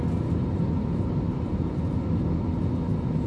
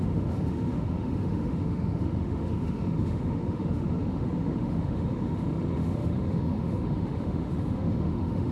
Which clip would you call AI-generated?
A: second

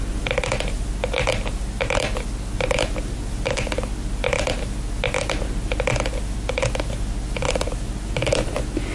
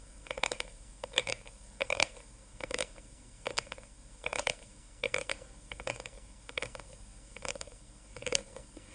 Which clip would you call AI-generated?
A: second